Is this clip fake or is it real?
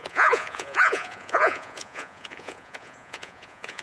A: fake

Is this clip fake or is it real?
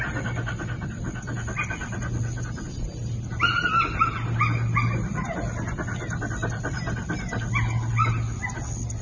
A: real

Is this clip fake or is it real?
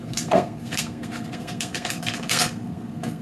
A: fake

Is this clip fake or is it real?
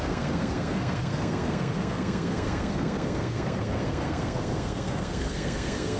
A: fake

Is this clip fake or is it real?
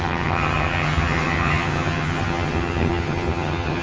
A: fake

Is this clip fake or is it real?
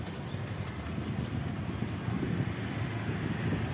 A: real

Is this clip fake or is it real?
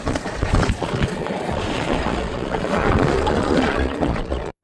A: fake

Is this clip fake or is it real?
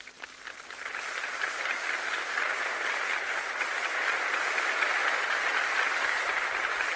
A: real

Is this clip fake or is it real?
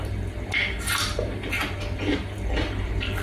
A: fake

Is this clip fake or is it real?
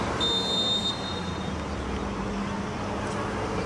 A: real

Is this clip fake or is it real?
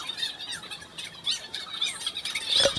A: real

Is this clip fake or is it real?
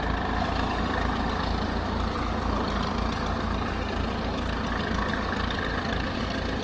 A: real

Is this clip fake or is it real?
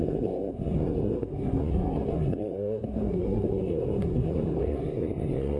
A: fake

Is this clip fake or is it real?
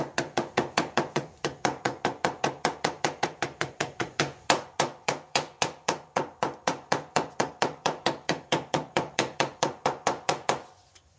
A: fake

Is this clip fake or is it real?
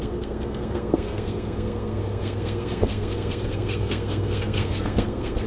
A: fake